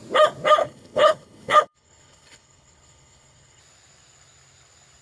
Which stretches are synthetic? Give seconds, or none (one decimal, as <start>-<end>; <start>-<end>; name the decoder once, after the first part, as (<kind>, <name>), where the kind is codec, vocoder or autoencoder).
0.6-3.6 (codec, HILCodec)